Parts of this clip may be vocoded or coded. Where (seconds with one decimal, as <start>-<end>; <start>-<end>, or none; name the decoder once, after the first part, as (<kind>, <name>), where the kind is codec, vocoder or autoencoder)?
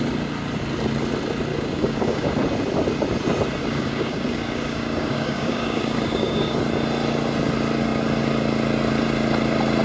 1.5-2.3 (codec, DAC); 3.6-6.6